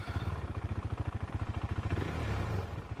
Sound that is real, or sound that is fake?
fake